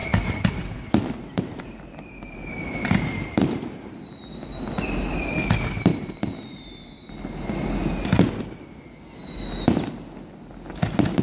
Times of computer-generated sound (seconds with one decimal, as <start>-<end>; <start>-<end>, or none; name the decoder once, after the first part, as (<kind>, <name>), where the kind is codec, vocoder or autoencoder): 0.0-4.2 (vocoder, BigVGAN v2); 5.9-7.1